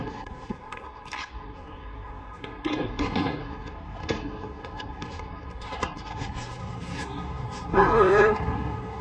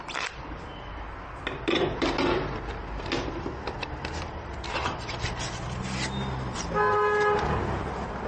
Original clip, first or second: second